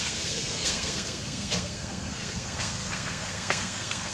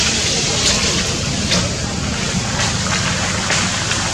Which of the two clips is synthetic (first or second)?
first